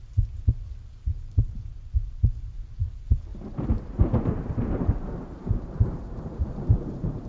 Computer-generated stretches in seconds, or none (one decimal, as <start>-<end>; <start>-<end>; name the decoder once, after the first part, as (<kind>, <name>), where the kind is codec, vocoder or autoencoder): 1.1-2.2 (vocoder, BigVGAN v2); 3.3-7.3